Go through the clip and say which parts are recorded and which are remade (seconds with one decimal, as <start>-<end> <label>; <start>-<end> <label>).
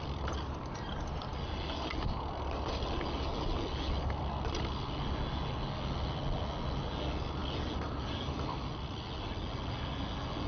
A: 0.0-10.5 recorded